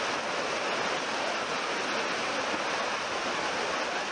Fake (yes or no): no